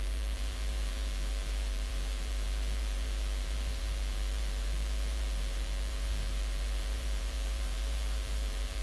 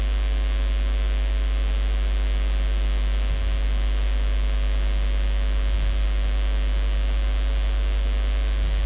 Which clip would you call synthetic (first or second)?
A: first